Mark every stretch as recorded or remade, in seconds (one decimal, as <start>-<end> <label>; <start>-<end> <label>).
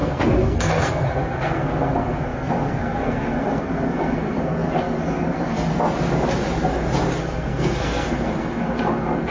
0.0-5.7 remade; 5.7-7.2 recorded; 7.2-9.3 remade